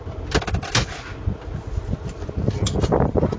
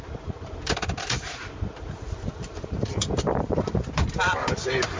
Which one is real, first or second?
first